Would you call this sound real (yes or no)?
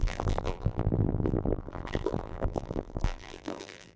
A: no